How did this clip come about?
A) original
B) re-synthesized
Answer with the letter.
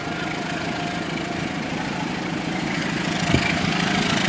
B